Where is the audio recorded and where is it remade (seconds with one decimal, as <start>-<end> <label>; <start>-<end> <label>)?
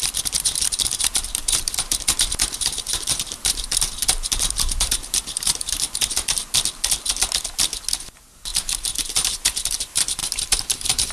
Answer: 0.0-6.4 remade; 6.4-8.0 recorded; 8.0-11.1 remade